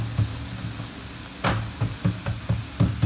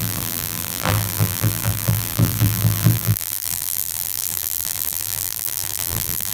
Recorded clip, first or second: first